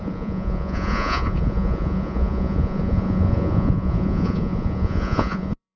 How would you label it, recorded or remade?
remade